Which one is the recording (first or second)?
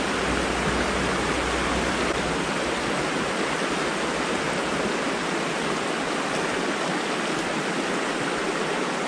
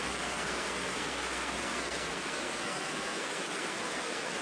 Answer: first